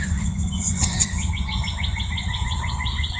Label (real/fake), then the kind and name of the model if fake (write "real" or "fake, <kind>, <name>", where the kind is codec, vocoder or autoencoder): fake, vocoder, Vocos